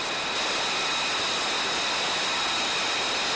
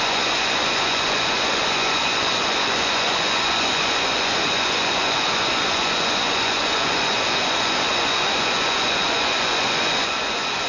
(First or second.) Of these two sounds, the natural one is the first